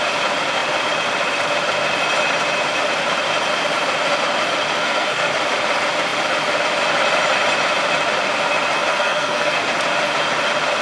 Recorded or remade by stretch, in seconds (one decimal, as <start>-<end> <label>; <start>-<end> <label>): 0.0-4.8 recorded; 4.8-5.3 remade; 5.3-8.9 recorded; 8.9-9.7 remade; 9.7-10.8 recorded